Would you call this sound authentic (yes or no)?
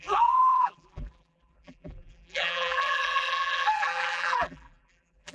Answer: no